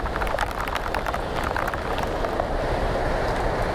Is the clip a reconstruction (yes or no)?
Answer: yes